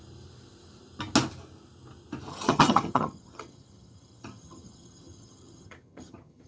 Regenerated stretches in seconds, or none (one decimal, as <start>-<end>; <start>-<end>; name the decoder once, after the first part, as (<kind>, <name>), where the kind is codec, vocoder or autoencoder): 2.3-6.5 (vocoder, HiFi-GAN)